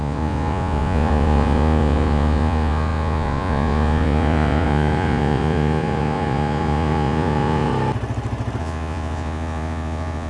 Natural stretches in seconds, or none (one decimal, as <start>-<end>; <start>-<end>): 7.7-8.6